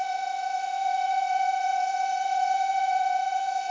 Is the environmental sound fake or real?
fake